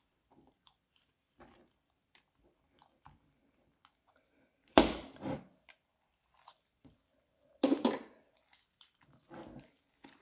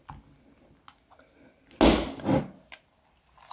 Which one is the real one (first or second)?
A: second